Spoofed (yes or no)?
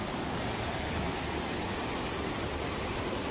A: no